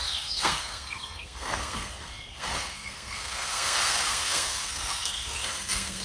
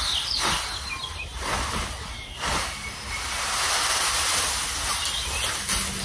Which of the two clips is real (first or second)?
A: second